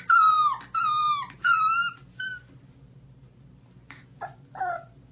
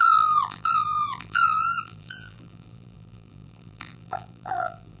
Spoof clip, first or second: second